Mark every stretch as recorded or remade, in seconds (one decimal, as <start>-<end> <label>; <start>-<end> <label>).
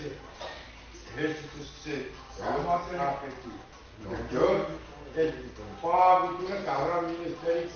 0.0-7.8 recorded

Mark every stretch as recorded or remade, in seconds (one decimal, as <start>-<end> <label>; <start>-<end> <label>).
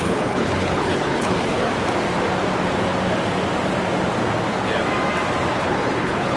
0.0-1.7 remade; 1.7-5.5 recorded; 5.5-6.4 remade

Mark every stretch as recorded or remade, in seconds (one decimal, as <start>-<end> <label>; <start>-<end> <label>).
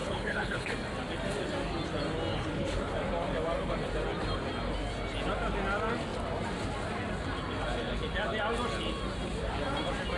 0.0-0.7 remade; 0.7-2.3 recorded; 2.3-2.9 remade; 2.9-10.2 recorded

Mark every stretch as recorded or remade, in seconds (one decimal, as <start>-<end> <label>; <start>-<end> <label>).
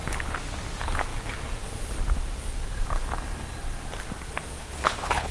0.0-4.6 recorded; 4.6-5.3 remade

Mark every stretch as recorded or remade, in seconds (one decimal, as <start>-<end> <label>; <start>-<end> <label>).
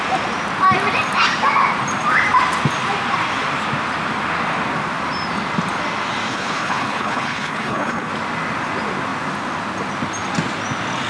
0.0-6.3 recorded; 6.3-8.1 remade; 8.1-11.1 recorded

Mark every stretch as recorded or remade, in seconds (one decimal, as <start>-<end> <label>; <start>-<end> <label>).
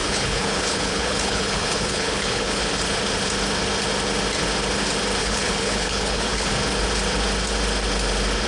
0.0-2.6 remade; 2.6-5.2 recorded; 5.2-6.5 remade; 6.5-8.5 recorded